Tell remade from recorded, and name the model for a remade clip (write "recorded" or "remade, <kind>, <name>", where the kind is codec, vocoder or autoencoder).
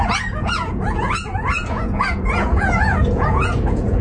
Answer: remade, vocoder, Vocos